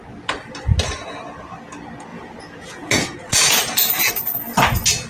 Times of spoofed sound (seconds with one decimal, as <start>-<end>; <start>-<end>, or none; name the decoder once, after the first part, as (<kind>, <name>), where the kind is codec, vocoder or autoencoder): 2.1-4.1 (vocoder, Vocos)